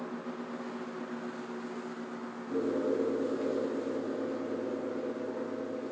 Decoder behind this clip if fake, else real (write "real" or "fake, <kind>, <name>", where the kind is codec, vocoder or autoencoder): real